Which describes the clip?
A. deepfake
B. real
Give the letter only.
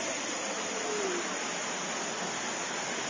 B